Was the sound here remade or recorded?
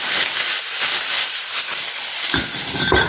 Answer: recorded